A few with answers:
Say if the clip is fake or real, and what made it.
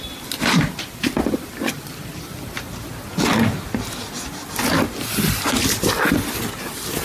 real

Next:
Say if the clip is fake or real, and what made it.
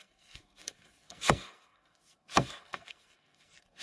fake, codec, SNAC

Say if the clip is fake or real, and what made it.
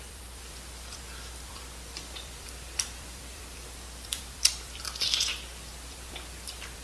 fake, vocoder, BigVGAN v2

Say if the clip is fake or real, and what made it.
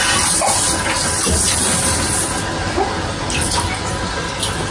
real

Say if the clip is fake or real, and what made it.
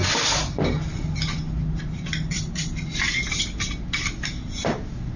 real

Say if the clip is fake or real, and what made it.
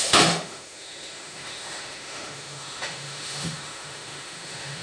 fake, autoencoder, DAC-VAE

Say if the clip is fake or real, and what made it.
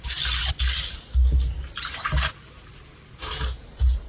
real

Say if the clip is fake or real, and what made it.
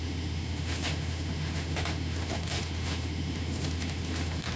fake, autoencoder, DAC-VAE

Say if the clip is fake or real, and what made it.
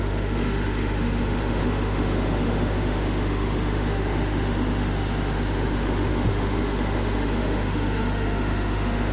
fake, autoencoder, DAC-VAE